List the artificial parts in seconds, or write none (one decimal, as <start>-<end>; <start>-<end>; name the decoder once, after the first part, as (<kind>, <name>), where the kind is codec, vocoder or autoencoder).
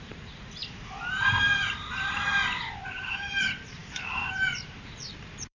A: 0.0-5.6 (vocoder, BigVGAN v2)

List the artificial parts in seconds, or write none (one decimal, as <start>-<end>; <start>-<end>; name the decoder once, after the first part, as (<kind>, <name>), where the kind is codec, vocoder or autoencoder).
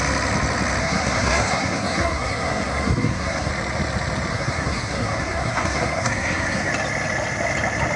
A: 0.8-3.5 (codec, SNAC); 4.3-6.7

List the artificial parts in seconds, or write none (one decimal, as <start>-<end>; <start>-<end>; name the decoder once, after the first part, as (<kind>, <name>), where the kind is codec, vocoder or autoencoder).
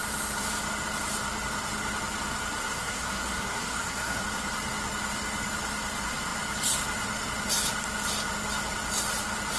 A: 2.6-4.2 (codec, SNAC)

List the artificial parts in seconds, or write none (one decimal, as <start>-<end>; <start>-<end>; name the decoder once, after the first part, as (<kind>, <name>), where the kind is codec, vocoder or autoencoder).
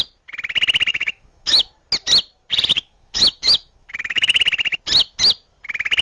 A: 0.9-1.7 (autoencoder, DAC-VAE); 2.7-4.4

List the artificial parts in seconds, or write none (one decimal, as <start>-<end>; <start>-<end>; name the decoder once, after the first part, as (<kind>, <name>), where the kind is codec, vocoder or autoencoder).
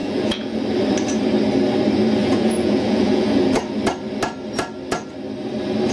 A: 0.0-0.6 (vocoder, Vocos); 2.2-3.7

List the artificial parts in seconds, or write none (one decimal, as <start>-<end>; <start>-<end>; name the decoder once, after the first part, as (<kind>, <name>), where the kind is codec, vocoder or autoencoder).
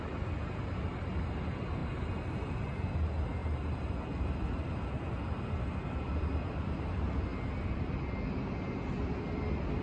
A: 3.4-4.0 (vocoder, BigVGAN v2)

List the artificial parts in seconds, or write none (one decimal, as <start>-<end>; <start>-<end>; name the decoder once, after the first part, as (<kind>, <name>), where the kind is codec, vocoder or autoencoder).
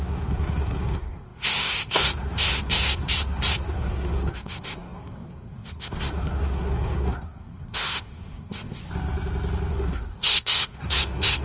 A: 0.0-8.8 (codec, SNAC); 9.7-11.4